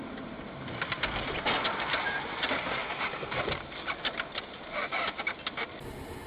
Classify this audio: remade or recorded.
recorded